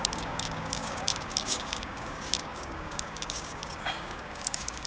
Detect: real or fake fake